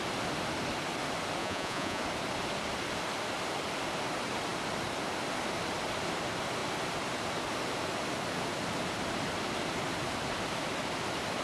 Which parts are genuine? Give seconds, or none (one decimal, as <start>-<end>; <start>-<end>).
0.0-1.4; 2.0-11.4